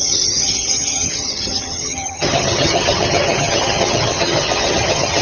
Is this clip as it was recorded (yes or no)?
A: no